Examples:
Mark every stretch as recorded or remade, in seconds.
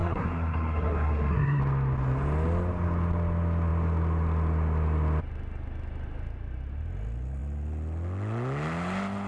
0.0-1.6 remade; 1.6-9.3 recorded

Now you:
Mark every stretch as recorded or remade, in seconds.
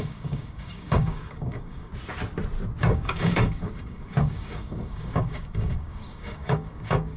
0.0-1.9 remade; 1.9-2.8 recorded; 2.8-7.2 remade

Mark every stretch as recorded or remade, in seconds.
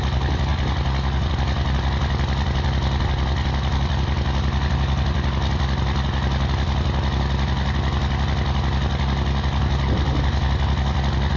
0.0-11.4 recorded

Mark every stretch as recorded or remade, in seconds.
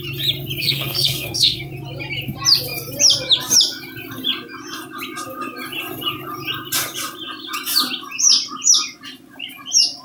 0.0-0.6 recorded; 0.6-1.7 remade; 1.7-10.0 recorded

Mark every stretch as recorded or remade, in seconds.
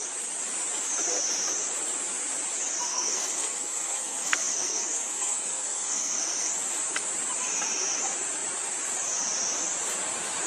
0.0-2.9 recorded; 2.9-6.5 remade; 6.5-10.5 recorded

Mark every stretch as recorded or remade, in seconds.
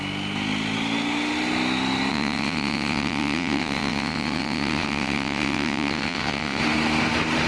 0.0-2.1 recorded; 2.1-6.6 remade; 6.6-7.5 recorded